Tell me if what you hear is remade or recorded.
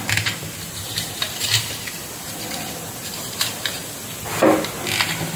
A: recorded